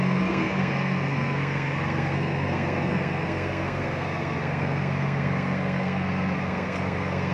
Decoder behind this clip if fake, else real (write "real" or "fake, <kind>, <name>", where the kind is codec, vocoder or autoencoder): fake, codec, SNAC